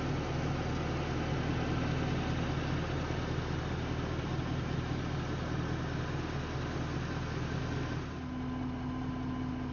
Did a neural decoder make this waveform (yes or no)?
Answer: no